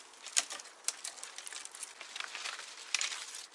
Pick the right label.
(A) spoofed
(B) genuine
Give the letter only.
B